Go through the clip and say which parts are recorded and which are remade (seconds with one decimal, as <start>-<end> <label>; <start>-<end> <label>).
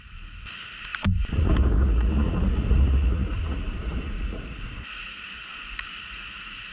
0.0-6.7 remade